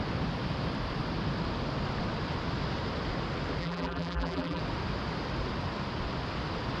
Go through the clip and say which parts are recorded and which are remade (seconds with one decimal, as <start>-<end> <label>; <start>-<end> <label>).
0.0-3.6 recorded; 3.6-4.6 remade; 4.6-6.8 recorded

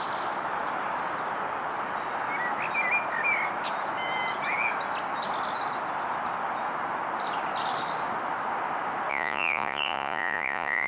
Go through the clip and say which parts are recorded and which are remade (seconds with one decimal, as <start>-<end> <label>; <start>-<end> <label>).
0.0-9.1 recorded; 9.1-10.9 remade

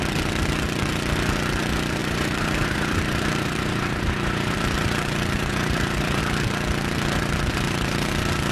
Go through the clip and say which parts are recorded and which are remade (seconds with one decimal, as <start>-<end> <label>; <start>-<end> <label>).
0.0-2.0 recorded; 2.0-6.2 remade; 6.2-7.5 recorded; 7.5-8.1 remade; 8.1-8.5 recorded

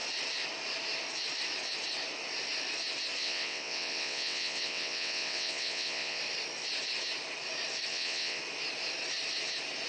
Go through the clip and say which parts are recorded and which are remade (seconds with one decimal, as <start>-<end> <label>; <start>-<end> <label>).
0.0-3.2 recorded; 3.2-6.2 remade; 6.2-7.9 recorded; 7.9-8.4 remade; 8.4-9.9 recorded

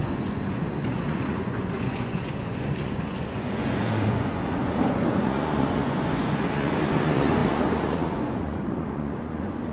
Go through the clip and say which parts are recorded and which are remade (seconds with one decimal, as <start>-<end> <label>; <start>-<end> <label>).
0.0-9.7 remade